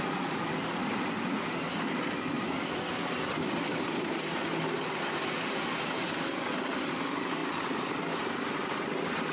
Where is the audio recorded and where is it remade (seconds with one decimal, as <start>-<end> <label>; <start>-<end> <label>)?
0.0-7.4 recorded; 7.4-8.2 remade; 8.2-9.3 recorded